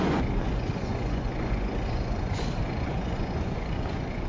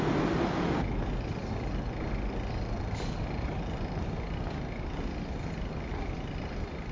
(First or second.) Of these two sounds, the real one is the second